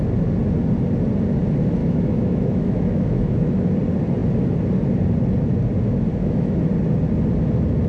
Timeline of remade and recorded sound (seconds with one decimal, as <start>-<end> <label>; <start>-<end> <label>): 0.0-1.8 recorded; 1.8-3.7 remade; 3.7-6.1 recorded; 6.1-6.6 remade; 6.6-7.9 recorded